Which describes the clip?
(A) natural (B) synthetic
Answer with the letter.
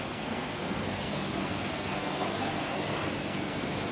B